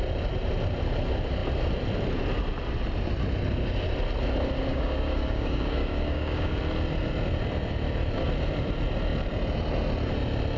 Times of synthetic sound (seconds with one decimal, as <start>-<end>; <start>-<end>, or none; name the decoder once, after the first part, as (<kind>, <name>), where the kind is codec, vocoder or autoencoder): 4.7-6.6 (codec, DAC)